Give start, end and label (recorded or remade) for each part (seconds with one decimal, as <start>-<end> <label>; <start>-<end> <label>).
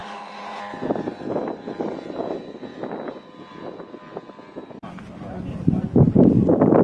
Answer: 0.0-0.6 remade; 0.6-6.8 recorded